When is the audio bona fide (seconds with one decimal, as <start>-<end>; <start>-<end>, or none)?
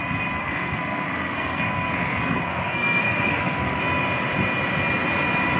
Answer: 0.0-0.4; 3.8-5.6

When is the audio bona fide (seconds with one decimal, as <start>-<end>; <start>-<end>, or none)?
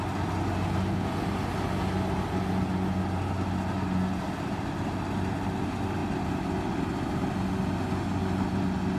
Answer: 0.0-9.0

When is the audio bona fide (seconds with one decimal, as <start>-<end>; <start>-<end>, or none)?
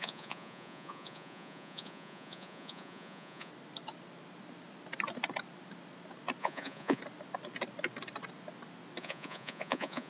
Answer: 3.5-6.4; 7.0-9.0